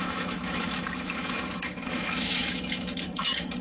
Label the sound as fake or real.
fake